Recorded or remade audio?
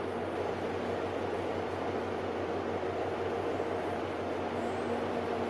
recorded